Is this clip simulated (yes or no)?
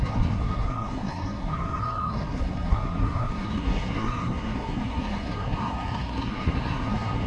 yes